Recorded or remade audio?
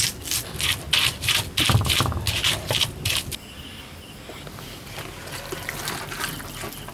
recorded